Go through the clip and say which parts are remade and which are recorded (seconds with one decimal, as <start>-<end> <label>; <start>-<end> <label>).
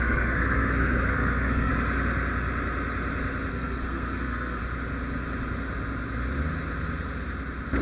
0.0-1.7 remade; 1.7-3.5 recorded; 3.5-4.6 remade; 4.6-7.8 recorded